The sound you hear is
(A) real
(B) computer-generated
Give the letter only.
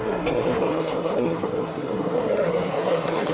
B